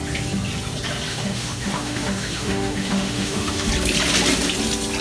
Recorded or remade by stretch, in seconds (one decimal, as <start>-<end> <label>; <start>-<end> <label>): 0.0-1.1 recorded; 1.1-3.7 remade; 3.7-5.0 recorded